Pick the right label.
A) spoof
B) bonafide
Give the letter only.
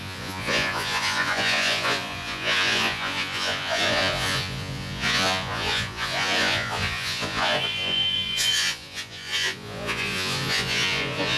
A